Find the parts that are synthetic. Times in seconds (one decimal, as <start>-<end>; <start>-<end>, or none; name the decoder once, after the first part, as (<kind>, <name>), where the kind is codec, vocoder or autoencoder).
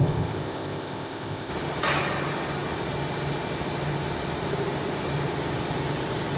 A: 0.0-1.5 (codec, ZipCodec)